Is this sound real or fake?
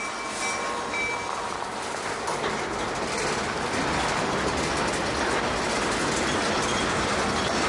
real